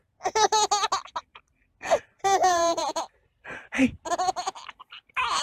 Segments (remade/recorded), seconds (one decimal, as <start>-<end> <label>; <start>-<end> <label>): 0.0-2.4 recorded; 2.4-3.0 remade; 3.0-5.4 recorded